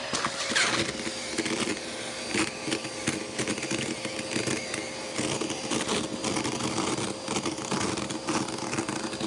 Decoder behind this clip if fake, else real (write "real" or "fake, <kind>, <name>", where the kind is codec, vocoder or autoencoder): real